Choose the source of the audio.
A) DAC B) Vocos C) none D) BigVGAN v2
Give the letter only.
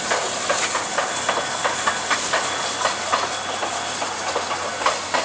C